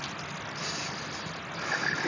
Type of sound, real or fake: real